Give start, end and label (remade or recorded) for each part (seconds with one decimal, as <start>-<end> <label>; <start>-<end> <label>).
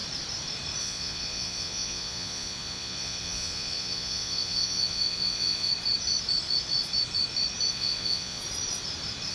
0.0-0.8 recorded; 0.8-5.7 remade; 5.7-7.7 recorded; 7.7-8.4 remade; 8.4-9.3 recorded